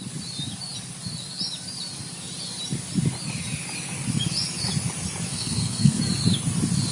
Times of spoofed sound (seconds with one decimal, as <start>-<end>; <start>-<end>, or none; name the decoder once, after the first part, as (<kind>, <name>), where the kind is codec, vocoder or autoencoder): 5.3-6.0 (codec, SNAC)